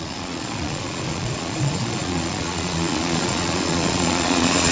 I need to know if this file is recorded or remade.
remade